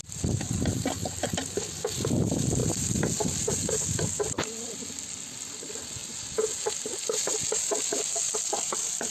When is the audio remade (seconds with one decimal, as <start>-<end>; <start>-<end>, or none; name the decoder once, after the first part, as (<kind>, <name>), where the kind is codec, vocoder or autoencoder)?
none